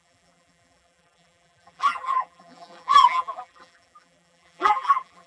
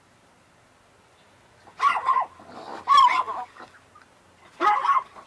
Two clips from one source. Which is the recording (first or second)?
second